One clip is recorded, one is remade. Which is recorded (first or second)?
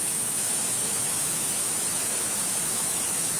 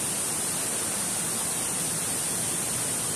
second